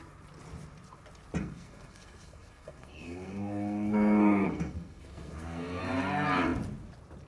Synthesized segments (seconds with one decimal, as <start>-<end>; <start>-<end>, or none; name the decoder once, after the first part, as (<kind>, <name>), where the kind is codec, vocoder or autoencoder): 1.4-5.8 (codec, SNAC)